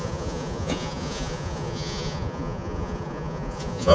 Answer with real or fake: fake